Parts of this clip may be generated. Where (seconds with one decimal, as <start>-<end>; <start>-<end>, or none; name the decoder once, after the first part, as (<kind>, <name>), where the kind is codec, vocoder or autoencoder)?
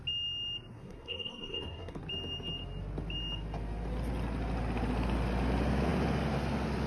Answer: 0.7-2.0 (codec, SNAC)